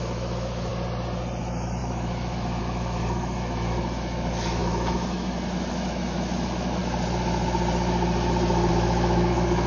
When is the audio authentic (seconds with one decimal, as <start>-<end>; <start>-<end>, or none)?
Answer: 0.7-1.4; 6.8-8.7